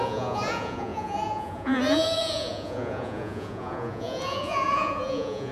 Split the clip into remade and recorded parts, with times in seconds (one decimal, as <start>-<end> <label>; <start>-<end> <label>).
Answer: 0.0-5.5 remade